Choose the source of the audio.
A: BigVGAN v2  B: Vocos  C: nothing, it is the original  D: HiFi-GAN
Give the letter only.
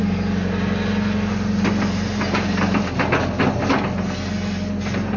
C